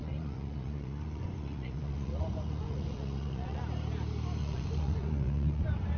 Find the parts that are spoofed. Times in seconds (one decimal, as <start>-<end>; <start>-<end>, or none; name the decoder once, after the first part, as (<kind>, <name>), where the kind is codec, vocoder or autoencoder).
0.0-3.6 (vocoder, Vocos); 4.4-6.0